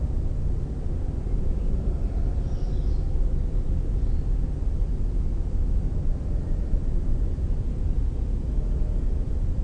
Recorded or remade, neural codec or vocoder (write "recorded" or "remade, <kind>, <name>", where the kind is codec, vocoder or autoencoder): recorded